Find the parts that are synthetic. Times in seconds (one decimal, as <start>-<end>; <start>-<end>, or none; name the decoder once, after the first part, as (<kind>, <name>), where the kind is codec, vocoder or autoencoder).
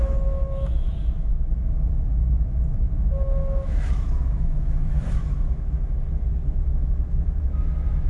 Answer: 0.0-8.1 (autoencoder, DAC-VAE)